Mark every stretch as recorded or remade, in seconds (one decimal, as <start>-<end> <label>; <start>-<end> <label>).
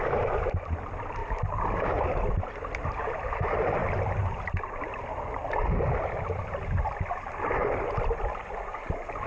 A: 0.0-7.6 recorded; 7.6-8.2 remade; 8.2-9.3 recorded